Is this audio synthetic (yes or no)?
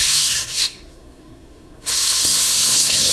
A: yes